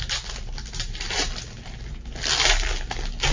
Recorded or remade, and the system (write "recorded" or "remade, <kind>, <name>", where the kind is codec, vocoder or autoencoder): recorded